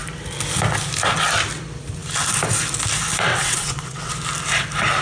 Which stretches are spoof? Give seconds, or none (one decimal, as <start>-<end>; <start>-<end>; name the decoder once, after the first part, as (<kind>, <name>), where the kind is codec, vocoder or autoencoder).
3.3-4.1 (vocoder, WaveNeXt)